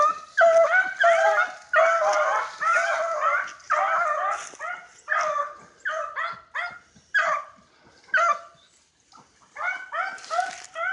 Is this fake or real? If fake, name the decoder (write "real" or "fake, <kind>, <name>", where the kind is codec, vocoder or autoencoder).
real